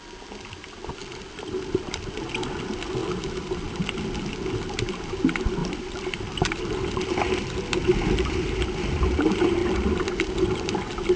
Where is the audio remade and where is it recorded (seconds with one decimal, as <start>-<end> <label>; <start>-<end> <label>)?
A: 0.0-3.0 recorded; 3.0-4.9 remade; 4.9-5.6 recorded; 5.6-8.6 remade; 8.6-9.6 recorded; 9.6-10.2 remade; 10.2-11.2 recorded